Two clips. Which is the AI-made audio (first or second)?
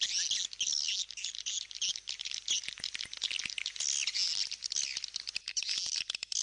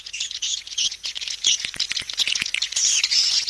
second